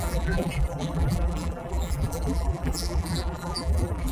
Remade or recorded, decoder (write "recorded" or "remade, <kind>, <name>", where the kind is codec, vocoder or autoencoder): remade, vocoder, BigVGAN v2